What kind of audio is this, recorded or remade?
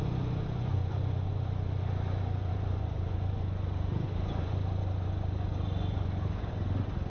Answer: remade